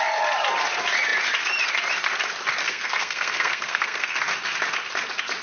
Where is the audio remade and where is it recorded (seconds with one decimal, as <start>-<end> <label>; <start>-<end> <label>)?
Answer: 0.0-2.6 recorded; 2.6-4.2 remade; 4.2-5.4 recorded

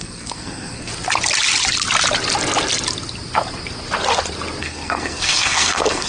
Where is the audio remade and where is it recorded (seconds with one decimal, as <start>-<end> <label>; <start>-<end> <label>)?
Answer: 0.0-0.9 remade; 0.9-4.6 recorded; 4.6-6.1 remade